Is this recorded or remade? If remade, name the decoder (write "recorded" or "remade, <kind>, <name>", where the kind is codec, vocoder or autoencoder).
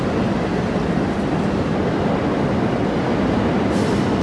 recorded